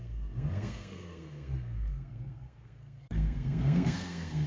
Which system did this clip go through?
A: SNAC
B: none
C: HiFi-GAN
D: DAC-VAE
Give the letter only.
A